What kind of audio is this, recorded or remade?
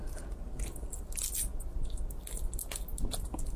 recorded